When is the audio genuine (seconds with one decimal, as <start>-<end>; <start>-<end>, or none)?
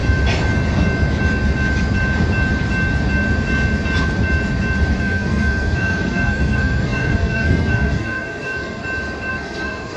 0.0-5.0; 8.8-9.3